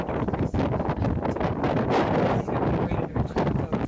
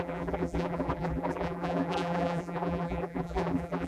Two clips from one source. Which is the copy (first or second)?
second